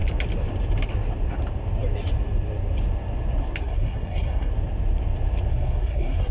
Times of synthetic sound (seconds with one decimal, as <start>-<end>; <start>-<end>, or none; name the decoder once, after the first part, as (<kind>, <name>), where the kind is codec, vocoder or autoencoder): 3.6-4.5 (codec, SNAC); 5.5-6.3